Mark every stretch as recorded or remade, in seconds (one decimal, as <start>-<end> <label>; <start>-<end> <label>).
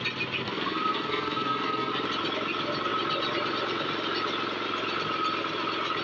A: 0.0-0.4 recorded; 0.4-1.9 remade; 1.9-6.0 recorded